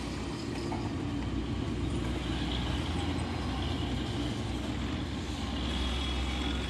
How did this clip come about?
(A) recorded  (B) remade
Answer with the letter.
A